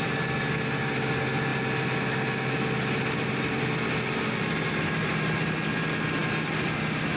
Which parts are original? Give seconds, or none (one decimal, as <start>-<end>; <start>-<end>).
0.0-7.2